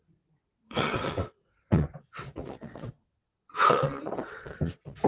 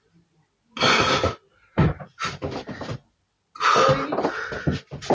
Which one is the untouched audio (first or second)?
second